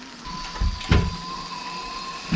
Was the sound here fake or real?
real